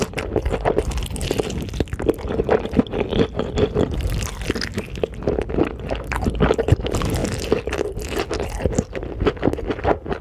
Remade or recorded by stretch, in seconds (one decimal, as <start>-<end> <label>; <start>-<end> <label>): 0.0-10.2 recorded